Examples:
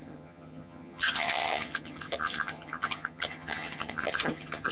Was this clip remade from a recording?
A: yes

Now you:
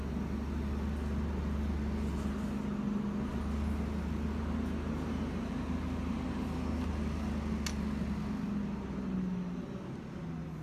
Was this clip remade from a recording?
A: no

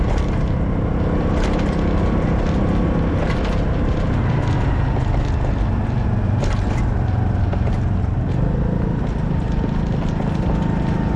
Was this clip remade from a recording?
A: no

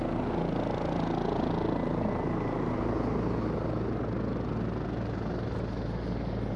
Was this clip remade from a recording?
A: no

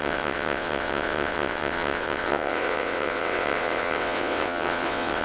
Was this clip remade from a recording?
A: yes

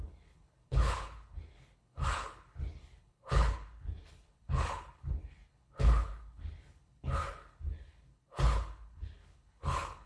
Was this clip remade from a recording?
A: yes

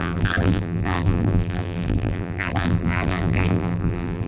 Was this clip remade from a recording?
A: yes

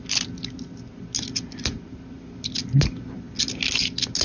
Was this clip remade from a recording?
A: no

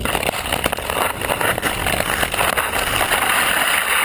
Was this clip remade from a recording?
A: no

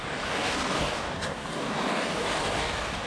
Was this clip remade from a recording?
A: yes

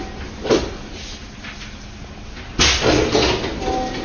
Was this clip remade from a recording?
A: no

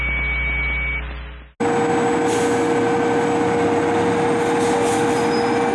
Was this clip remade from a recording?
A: no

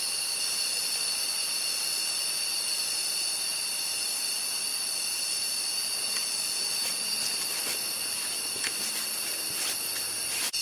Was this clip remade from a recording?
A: no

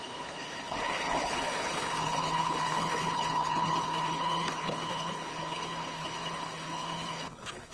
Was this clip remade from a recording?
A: yes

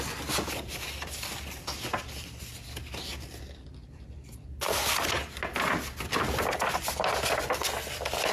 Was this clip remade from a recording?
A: no